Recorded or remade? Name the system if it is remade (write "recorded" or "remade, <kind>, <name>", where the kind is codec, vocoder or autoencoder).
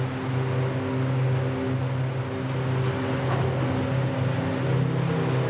recorded